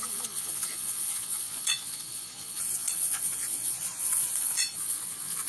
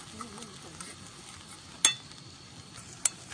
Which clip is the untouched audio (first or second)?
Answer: second